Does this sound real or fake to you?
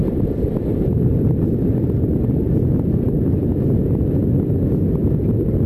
real